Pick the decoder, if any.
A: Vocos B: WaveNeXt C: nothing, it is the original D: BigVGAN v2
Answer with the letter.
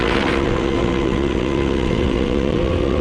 B